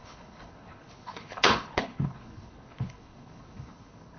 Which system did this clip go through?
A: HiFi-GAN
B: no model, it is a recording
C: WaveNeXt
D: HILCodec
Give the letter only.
D